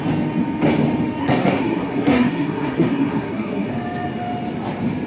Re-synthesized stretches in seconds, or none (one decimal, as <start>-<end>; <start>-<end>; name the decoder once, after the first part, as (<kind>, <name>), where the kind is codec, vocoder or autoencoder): 1.2-3.7 (codec, SNAC)